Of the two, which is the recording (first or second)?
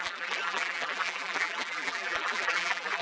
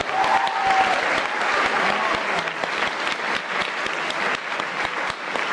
second